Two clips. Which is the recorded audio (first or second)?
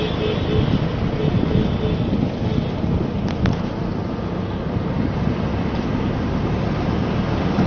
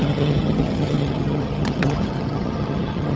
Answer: first